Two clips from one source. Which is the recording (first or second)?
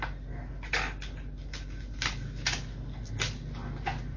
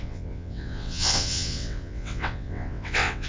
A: first